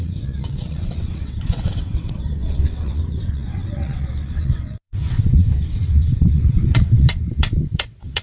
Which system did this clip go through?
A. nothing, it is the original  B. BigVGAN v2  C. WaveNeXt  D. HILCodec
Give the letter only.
C